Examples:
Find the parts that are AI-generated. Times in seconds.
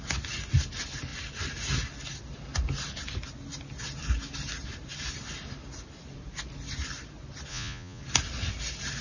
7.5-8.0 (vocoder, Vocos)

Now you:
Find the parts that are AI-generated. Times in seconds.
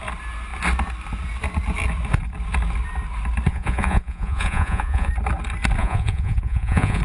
3.5-5.1 (vocoder, Vocos); 5.8-7.0